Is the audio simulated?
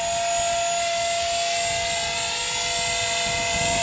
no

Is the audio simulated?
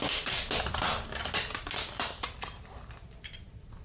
no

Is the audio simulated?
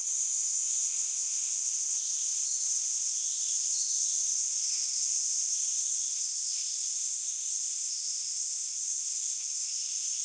yes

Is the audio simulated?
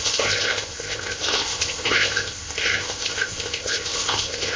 yes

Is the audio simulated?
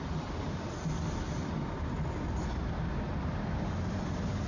no